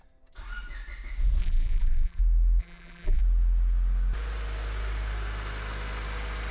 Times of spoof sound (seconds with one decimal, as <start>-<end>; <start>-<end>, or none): 1.4-2.2; 2.6-3.2